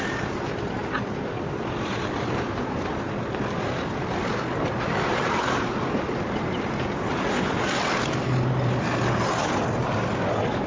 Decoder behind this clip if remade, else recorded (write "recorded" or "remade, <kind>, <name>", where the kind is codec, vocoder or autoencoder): recorded